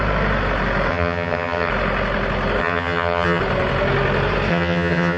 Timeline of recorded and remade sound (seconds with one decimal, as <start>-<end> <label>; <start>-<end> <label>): 0.0-0.9 recorded; 0.9-1.7 remade; 1.7-2.6 recorded; 2.6-3.4 remade; 3.4-4.5 recorded; 4.5-5.2 remade